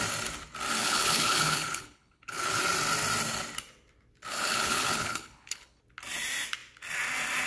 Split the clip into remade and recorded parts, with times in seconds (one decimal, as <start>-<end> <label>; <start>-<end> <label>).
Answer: 0.0-0.8 recorded; 0.8-2.6 remade; 2.6-4.3 recorded; 4.3-5.8 remade; 5.8-7.5 recorded